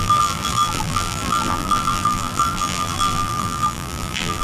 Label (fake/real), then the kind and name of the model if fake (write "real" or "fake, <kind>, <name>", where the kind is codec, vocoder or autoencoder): fake, vocoder, BigVGAN v2